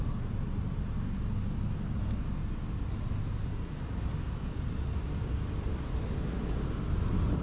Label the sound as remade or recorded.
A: recorded